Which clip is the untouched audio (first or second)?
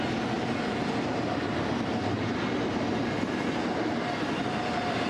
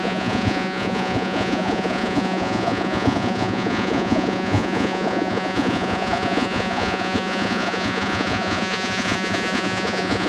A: first